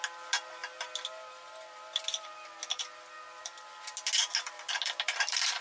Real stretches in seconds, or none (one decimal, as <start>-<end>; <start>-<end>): 0.0-5.6